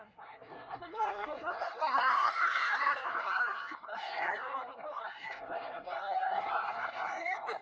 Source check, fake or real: fake